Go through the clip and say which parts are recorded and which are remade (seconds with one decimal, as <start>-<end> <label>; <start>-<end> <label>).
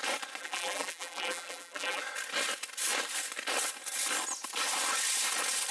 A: 0.0-0.4 recorded; 0.4-2.0 remade; 2.0-5.7 recorded